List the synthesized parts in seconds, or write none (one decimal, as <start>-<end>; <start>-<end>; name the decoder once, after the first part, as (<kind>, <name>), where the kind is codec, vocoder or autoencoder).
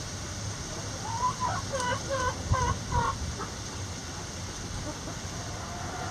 none